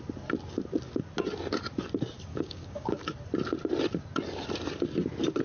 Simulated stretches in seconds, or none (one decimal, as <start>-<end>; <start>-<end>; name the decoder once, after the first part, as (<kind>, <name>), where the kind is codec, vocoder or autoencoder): 2.3-3.0 (codec, DAC)